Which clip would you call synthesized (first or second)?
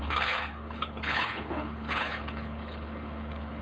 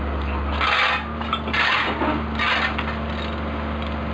first